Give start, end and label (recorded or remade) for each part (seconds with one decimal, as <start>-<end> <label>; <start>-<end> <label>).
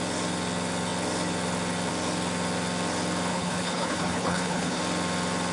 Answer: 0.0-3.3 recorded; 3.3-4.8 remade; 4.8-5.5 recorded